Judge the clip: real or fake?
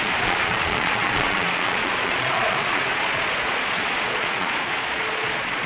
fake